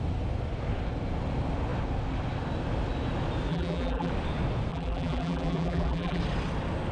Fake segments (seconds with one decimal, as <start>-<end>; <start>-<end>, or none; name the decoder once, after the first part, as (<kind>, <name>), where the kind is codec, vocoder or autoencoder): 3.5-4.1 (vocoder, BigVGAN v2); 4.7-6.2